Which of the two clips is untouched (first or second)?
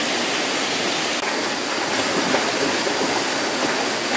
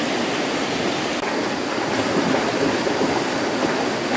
first